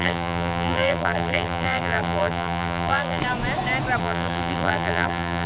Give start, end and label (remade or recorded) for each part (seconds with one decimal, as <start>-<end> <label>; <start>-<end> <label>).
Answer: 0.0-3.2 remade; 3.2-4.0 recorded; 4.0-5.5 remade